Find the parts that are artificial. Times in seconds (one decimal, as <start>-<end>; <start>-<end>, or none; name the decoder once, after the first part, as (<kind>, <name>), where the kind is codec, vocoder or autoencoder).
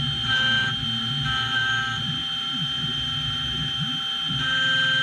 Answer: none